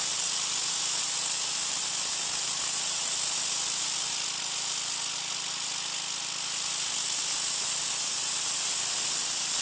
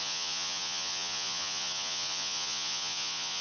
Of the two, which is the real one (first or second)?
first